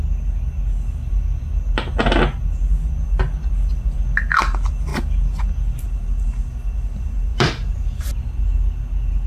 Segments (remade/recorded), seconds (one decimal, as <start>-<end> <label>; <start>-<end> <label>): 0.0-7.3 recorded; 7.3-8.0 remade; 8.0-9.3 recorded